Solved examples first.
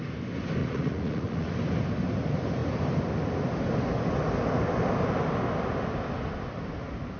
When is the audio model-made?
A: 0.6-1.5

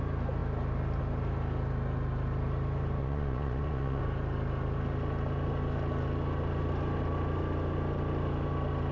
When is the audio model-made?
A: 3.0-4.0